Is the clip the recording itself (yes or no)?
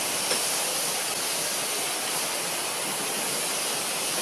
yes